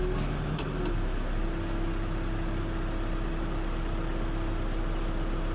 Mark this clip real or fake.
real